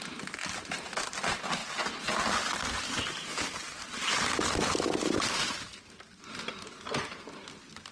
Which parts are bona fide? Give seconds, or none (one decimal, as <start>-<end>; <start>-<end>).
0.0-7.9